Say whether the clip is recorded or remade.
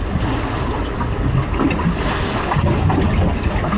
recorded